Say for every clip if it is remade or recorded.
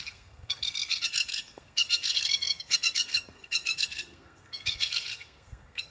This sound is remade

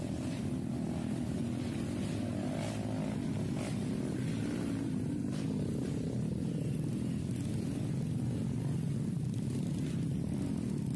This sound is recorded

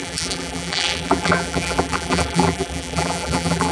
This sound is remade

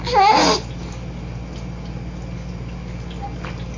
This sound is recorded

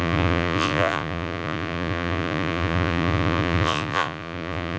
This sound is remade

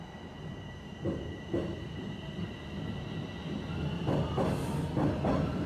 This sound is recorded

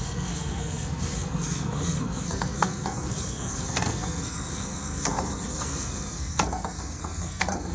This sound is remade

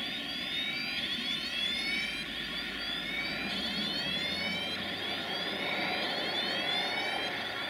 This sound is recorded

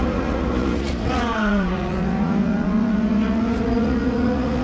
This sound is remade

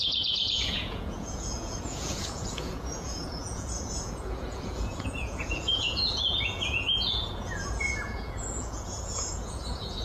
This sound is remade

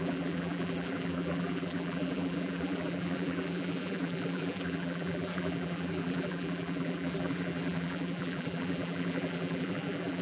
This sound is remade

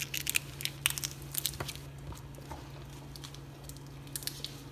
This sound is recorded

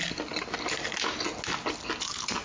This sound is recorded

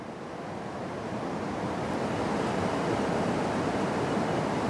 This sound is recorded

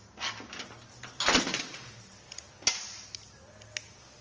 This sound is recorded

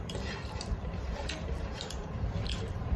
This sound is remade